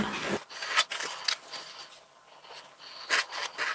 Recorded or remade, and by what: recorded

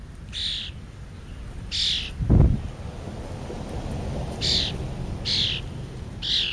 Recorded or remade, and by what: recorded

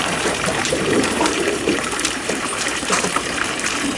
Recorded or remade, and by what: remade, vocoder, BigVGAN v2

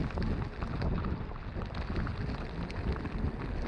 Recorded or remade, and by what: recorded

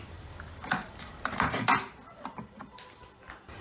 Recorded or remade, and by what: remade, vocoder, BigVGAN v2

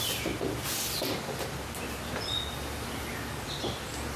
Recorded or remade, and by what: recorded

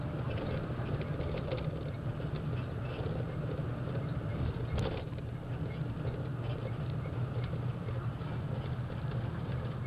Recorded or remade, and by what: remade, vocoder, BigVGAN v2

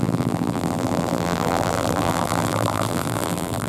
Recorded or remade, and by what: remade, vocoder, BigVGAN v2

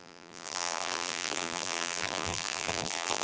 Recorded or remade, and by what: remade, vocoder, BigVGAN v2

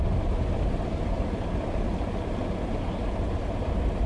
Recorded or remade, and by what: recorded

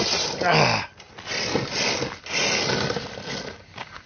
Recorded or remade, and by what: recorded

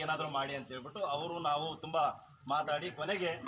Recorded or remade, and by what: remade, vocoder, BigVGAN v2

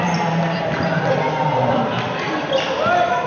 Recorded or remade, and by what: remade, vocoder, BigVGAN v2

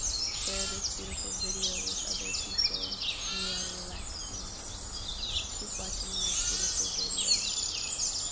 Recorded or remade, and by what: recorded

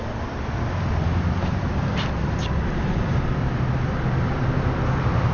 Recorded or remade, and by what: recorded